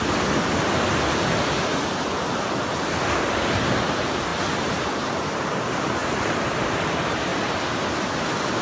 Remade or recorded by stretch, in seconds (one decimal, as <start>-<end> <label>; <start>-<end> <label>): 0.0-4.3 recorded; 4.3-5.1 remade; 5.1-6.0 recorded; 6.0-6.6 remade; 6.6-8.6 recorded